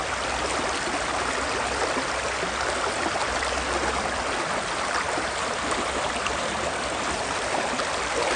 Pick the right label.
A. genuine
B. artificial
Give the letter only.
A